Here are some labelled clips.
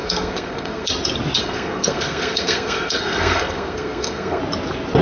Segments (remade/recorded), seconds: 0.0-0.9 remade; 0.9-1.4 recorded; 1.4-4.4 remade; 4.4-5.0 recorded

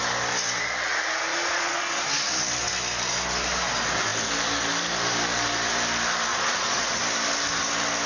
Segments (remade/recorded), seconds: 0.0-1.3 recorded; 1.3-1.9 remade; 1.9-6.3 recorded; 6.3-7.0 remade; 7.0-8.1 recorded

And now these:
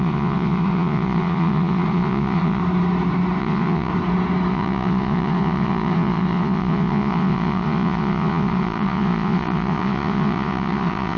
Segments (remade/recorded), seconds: 0.0-2.6 remade; 2.6-3.4 recorded; 3.4-3.9 remade; 3.9-4.5 recorded; 4.5-11.2 remade

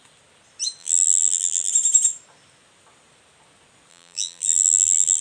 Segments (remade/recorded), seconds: 0.0-0.8 recorded; 0.8-1.7 remade; 1.7-3.9 recorded; 3.9-5.2 remade

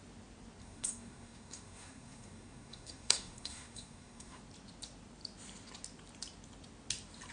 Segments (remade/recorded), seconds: 0.0-0.6 recorded; 0.6-4.4 remade; 4.4-7.3 recorded

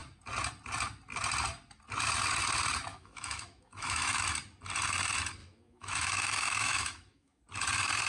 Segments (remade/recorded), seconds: 0.0-2.9 recorded; 2.9-4.2 remade; 4.2-5.4 recorded; 5.4-7.4 remade; 7.4-8.1 recorded

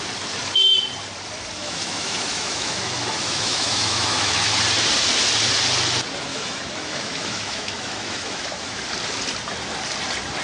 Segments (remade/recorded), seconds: 0.0-1.6 recorded; 1.6-4.5 remade; 4.5-6.3 recorded; 6.3-8.8 remade; 8.8-10.4 recorded

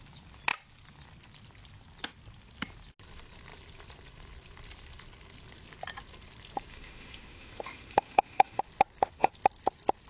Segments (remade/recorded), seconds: 0.0-6.7 recorded; 6.7-8.6 remade; 8.6-10.1 recorded